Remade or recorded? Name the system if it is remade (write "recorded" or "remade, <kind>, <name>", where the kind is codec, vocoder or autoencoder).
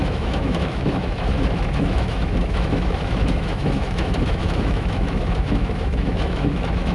remade, autoencoder, DAC-VAE